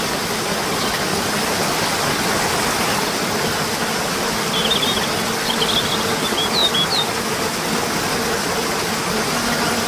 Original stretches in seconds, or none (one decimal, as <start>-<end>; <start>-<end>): 0.0-9.9